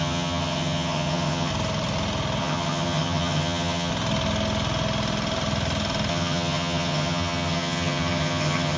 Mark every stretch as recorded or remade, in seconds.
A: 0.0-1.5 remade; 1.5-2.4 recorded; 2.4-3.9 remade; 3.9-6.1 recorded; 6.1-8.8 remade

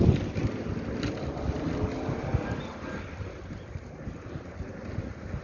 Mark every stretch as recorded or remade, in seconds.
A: 0.0-2.3 recorded; 2.3-4.5 remade; 4.5-5.4 recorded